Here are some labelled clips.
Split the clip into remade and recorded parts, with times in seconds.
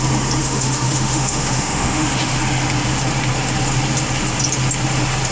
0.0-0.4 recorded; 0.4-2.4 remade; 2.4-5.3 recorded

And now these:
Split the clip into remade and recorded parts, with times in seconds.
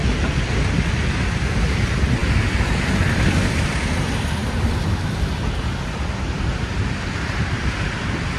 0.0-8.4 remade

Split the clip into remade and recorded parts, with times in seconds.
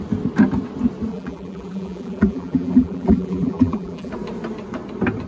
0.0-1.1 recorded; 1.1-4.1 remade; 4.1-5.3 recorded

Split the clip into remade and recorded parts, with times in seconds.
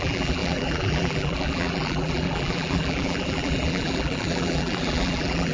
0.0-5.5 remade